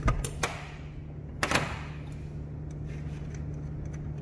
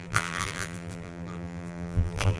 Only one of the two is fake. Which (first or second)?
second